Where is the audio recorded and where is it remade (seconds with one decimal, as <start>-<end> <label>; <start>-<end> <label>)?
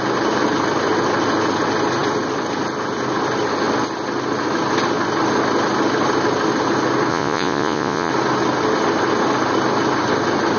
0.0-7.1 recorded; 7.1-8.1 remade; 8.1-10.6 recorded